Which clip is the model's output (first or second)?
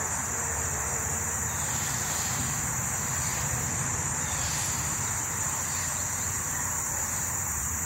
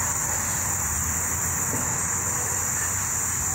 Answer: first